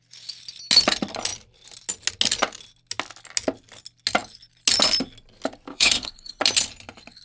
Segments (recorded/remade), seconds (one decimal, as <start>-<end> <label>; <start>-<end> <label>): 0.0-5.7 recorded; 5.7-6.4 remade; 6.4-7.2 recorded